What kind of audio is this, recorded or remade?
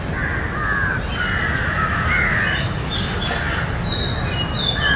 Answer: recorded